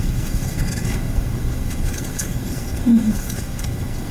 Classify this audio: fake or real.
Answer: fake